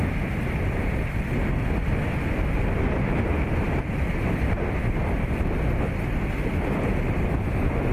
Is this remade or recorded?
recorded